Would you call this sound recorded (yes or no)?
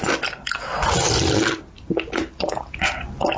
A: yes